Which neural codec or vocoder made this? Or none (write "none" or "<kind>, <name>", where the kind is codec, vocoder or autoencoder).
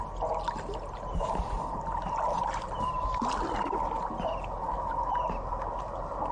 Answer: none